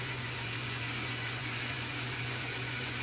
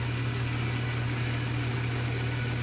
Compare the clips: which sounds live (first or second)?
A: second